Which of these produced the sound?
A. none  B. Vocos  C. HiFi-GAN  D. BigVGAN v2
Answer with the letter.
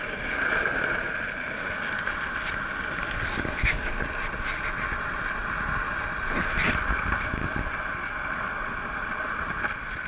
A